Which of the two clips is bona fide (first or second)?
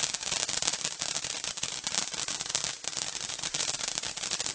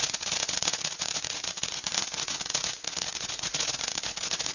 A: first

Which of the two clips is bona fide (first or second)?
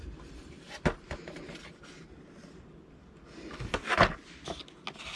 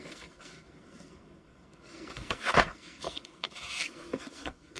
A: first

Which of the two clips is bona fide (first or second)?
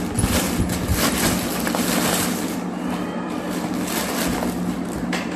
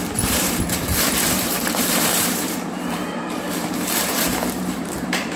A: first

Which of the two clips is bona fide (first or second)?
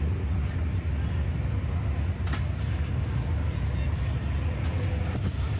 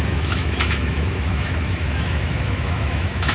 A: first